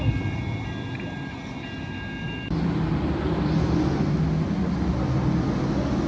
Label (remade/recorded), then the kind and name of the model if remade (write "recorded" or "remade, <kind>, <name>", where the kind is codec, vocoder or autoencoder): recorded